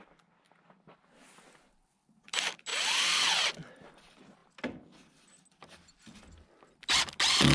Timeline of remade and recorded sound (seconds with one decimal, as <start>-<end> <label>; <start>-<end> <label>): 0.0-2.7 recorded; 2.7-3.9 remade; 3.9-7.5 recorded